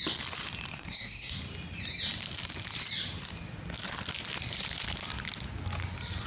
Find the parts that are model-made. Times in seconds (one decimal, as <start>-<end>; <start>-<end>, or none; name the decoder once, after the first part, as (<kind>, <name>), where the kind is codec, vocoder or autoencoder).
0.7-1.4 (codec, SNAC)